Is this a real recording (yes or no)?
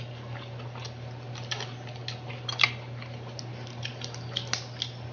yes